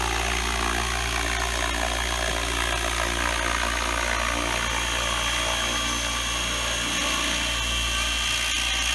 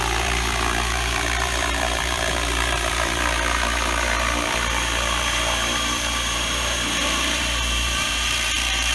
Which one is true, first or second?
first